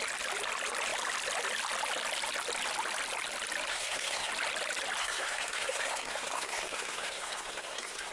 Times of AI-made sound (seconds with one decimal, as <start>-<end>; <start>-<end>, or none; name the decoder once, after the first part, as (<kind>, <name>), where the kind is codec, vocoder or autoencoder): 3.7-4.3 (codec, SNAC); 5.0-8.1